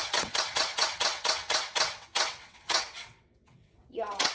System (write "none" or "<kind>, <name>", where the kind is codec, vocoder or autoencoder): vocoder, WaveNeXt